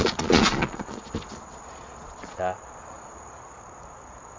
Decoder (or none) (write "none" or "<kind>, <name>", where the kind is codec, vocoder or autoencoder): vocoder, Vocos